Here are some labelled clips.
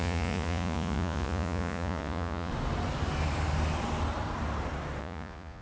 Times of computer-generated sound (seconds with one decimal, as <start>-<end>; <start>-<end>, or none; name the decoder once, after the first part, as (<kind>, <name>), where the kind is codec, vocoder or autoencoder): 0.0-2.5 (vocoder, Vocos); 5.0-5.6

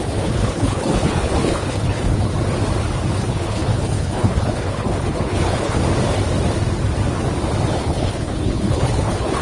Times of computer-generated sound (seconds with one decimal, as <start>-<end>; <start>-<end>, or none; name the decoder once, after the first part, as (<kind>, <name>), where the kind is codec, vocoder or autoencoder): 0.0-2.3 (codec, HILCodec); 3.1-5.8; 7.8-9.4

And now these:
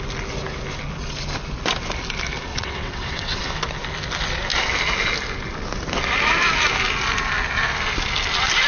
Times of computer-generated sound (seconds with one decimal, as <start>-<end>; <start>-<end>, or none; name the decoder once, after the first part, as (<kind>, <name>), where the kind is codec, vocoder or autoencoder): 2.5-3.4 (vocoder, WaveNeXt)